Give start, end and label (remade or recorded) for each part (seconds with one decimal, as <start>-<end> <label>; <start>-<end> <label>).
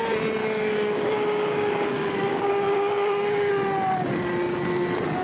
0.0-0.4 recorded; 0.4-3.5 remade; 3.5-5.2 recorded